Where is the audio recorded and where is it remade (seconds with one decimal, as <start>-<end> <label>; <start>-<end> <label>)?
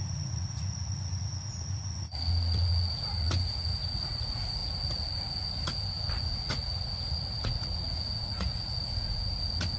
0.0-4.6 remade; 4.6-6.1 recorded; 6.1-9.8 remade